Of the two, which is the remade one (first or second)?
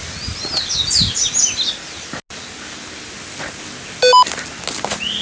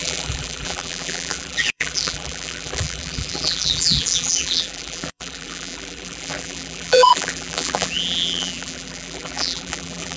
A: second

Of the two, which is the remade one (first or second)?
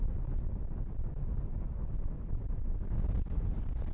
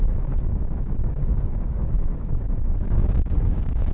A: second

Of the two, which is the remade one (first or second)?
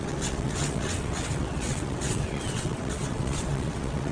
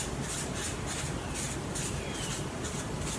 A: first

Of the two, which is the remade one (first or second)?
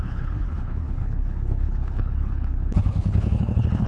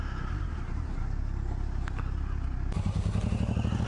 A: first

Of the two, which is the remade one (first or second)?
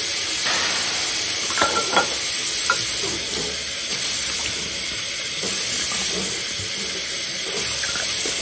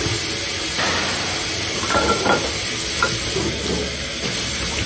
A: first